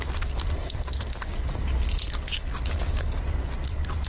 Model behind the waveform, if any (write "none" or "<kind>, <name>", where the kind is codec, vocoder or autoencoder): none